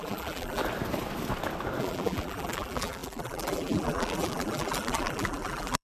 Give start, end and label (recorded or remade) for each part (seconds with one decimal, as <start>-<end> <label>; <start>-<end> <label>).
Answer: 0.0-0.6 remade; 0.6-1.8 recorded; 1.8-5.8 remade

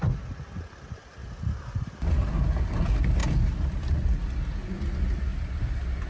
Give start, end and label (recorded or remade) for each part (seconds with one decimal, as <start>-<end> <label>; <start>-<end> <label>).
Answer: 0.0-1.2 recorded; 1.2-2.3 remade; 2.3-3.2 recorded; 3.2-3.7 remade; 3.7-6.1 recorded

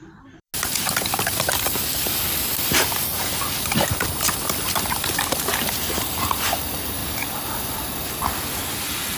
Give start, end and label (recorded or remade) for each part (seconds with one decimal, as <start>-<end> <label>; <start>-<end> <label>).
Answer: 0.0-0.5 remade; 0.5-1.5 recorded; 1.5-7.0 remade; 7.0-7.7 recorded; 7.7-9.2 remade

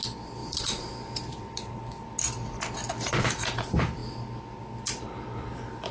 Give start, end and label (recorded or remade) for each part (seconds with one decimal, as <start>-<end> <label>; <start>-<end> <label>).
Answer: 0.0-0.4 recorded; 0.4-2.1 remade; 2.1-5.9 recorded

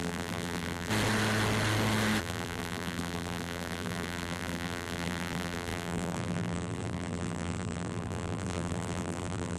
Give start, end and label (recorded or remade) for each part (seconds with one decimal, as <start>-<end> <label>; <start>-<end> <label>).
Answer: 0.0-0.9 remade; 0.9-2.2 recorded; 2.2-9.6 remade

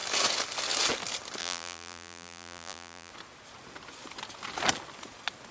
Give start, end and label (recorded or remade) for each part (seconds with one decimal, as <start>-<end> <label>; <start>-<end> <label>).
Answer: 0.0-1.4 recorded; 1.4-3.1 remade; 3.1-5.5 recorded

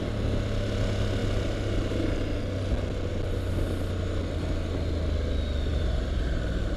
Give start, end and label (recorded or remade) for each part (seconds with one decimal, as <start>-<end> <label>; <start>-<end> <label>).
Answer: 0.0-5.7 recorded; 5.7-6.8 remade